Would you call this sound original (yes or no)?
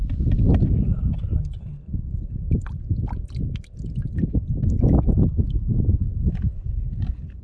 yes